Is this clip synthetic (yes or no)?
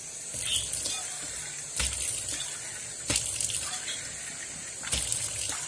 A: no